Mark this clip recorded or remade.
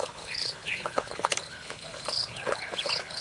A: remade